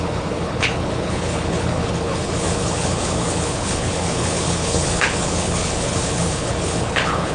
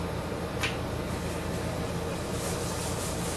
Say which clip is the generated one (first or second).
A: first